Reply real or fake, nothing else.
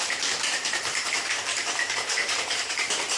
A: fake